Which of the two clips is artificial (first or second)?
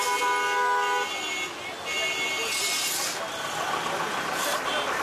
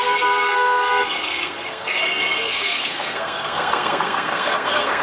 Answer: second